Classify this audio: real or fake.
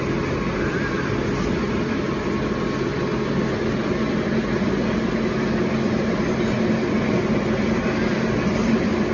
real